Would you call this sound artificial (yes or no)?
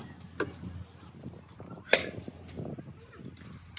no